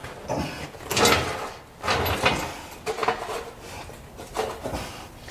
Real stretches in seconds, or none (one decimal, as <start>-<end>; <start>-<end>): 0.0-5.3

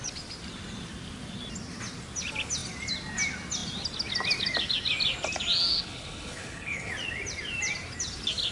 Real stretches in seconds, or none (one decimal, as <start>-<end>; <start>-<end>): 0.0-5.7; 6.9-8.5

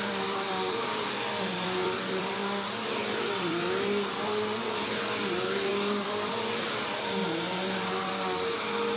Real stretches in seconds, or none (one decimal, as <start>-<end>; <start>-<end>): 2.4-3.4; 7.2-7.8

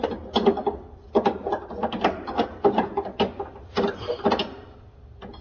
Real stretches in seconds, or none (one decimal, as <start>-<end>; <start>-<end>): 0.0-5.4

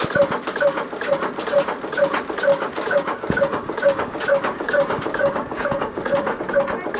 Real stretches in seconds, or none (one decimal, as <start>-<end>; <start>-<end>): 0.0-2.5; 6.4-7.0

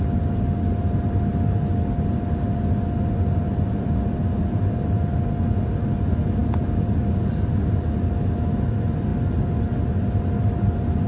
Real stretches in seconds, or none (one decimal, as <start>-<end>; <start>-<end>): 0.0-11.1

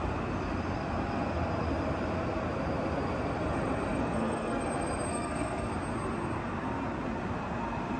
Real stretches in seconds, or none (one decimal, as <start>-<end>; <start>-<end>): 0.0-4.0; 4.6-5.1; 5.7-8.0

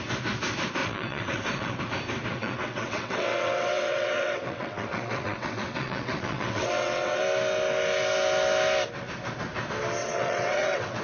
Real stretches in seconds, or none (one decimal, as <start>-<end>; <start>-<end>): 0.0-0.8; 1.8-2.3; 7.2-10.0